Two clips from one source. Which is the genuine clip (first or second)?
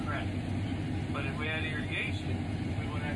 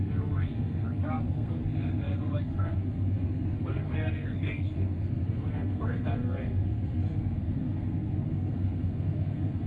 first